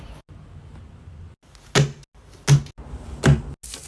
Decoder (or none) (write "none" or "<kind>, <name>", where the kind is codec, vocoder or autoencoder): none